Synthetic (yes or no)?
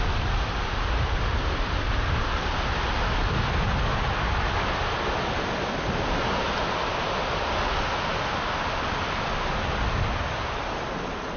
no